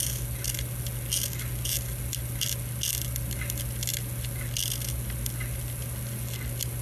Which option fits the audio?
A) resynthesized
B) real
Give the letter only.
B